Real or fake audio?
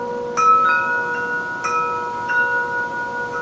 real